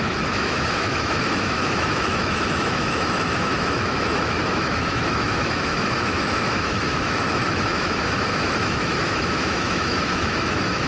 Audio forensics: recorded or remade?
remade